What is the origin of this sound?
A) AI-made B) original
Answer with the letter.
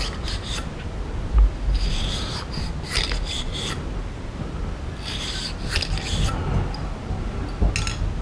B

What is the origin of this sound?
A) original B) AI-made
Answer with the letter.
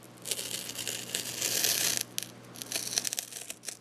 A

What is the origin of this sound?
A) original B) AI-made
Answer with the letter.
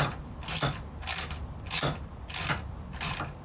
A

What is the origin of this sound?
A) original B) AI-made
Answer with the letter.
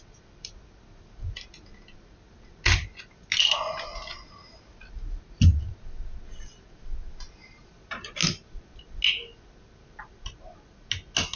A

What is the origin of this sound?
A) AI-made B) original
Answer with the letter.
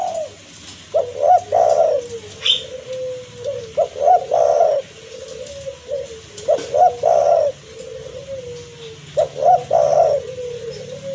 B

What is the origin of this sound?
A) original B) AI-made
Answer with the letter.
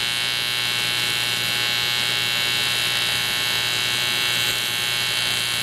A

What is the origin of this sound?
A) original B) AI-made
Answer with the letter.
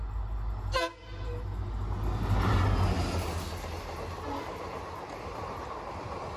A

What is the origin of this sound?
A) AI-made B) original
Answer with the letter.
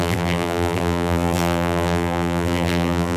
A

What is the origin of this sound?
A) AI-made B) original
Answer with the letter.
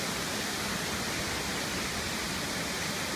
B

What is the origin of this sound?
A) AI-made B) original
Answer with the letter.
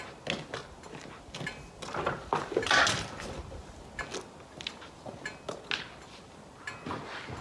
B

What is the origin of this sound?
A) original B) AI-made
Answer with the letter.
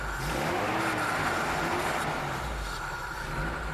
A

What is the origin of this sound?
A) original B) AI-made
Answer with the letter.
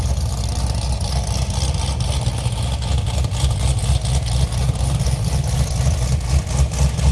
A